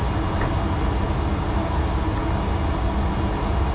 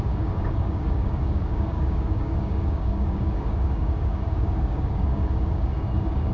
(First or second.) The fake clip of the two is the second